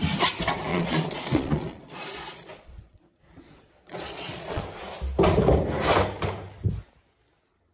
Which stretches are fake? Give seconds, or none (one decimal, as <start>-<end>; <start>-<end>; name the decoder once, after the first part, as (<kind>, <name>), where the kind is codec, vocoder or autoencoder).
0.7-4.6 (vocoder, Vocos)